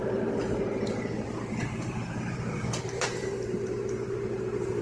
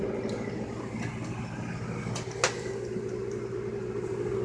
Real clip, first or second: second